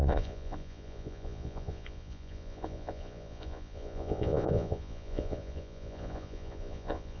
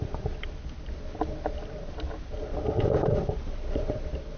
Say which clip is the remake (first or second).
first